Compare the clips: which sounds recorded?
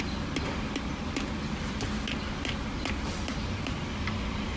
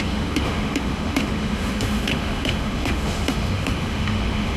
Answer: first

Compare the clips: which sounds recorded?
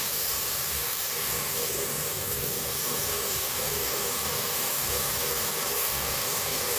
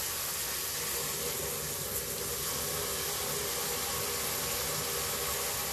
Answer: second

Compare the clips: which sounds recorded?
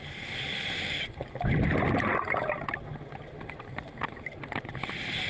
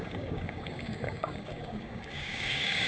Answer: first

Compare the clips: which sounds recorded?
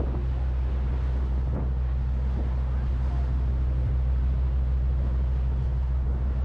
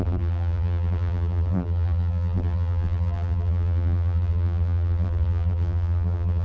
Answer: first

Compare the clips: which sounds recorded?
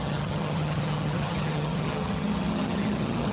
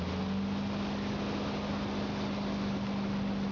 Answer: second